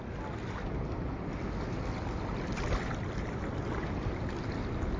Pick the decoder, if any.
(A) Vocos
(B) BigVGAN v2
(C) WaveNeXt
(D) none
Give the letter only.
D